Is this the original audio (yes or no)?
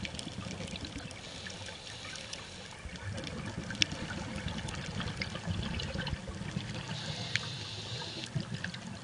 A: yes